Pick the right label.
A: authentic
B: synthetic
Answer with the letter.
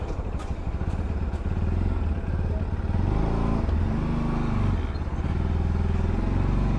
A